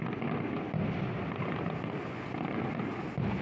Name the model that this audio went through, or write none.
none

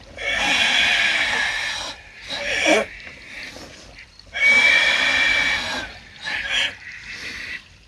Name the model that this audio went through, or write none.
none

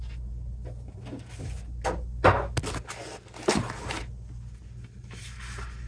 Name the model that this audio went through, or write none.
none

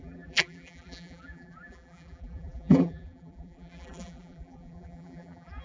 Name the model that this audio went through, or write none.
vocoder, BigVGAN v2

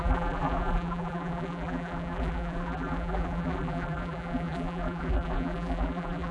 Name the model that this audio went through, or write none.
vocoder, BigVGAN v2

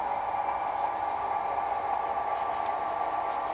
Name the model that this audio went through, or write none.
none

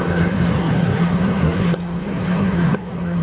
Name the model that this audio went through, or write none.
codec, SNAC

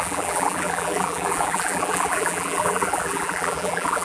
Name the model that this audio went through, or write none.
vocoder, BigVGAN v2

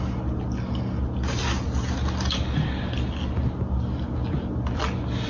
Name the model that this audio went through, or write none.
none